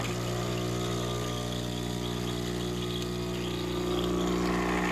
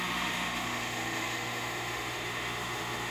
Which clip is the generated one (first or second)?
second